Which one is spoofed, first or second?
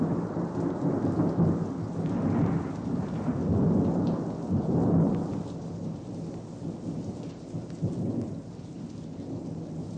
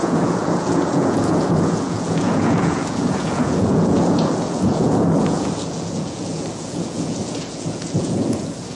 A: second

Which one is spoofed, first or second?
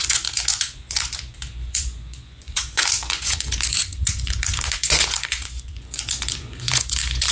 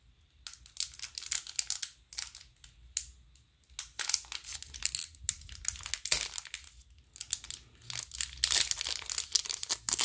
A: first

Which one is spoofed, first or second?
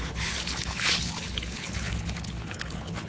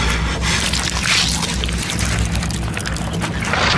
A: first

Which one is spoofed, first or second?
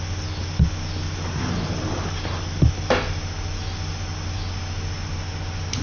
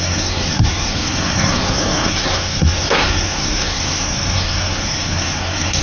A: second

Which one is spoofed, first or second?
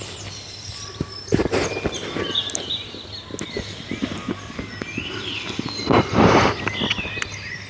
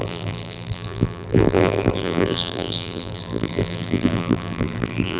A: second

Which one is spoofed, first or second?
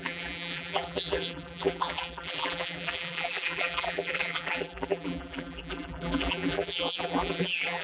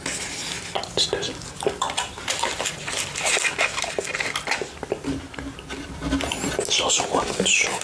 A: first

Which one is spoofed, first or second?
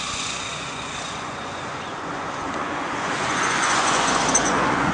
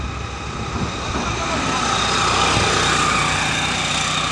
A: first